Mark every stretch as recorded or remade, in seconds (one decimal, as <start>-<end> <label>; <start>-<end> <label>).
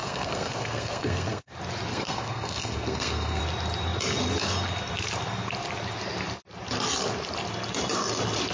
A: 0.0-1.5 remade; 1.5-1.9 recorded; 1.9-3.4 remade; 3.4-8.5 recorded